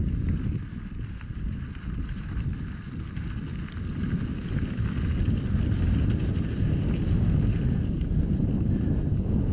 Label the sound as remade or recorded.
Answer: recorded